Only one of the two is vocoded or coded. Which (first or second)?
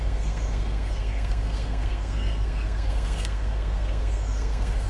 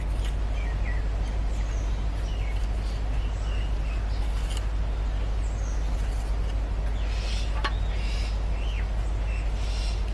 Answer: first